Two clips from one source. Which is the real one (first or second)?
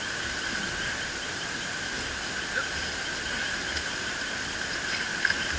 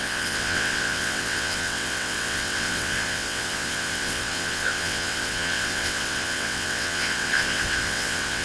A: first